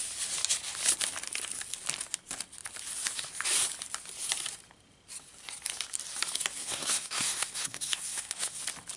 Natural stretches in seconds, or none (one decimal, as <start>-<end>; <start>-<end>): 0.0-6.6; 8.6-9.0